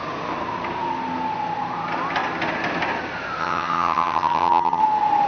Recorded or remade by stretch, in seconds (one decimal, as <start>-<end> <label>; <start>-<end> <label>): 0.0-3.4 recorded; 3.4-4.8 remade; 4.8-5.3 recorded